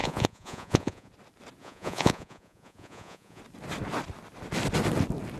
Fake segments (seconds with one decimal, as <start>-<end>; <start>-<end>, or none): 0.0-1.1; 1.6-3.4